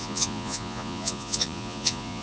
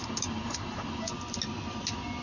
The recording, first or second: second